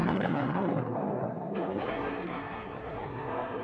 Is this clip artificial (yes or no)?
yes